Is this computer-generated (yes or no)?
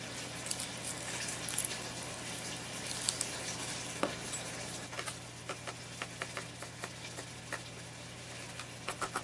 no